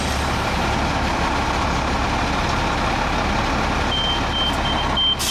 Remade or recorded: recorded